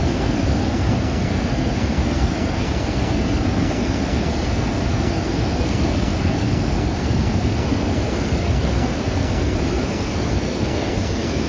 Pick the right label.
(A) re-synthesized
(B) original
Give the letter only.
A